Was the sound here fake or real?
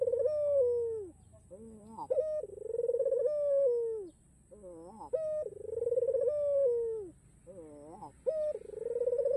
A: real